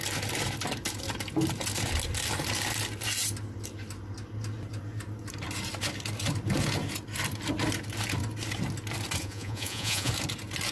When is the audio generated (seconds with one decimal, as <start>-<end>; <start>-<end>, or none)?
9.2-10.1